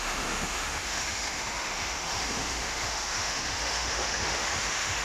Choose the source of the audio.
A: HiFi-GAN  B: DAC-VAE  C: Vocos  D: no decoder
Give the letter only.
B